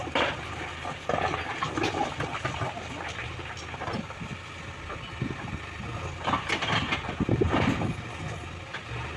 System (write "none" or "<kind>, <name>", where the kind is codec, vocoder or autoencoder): none